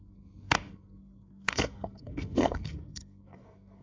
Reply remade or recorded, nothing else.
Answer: remade